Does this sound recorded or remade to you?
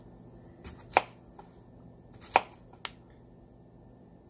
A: recorded